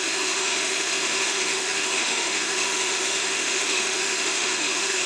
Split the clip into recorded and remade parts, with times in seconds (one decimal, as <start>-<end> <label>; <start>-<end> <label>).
0.0-5.1 remade